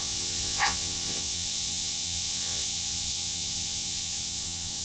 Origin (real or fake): fake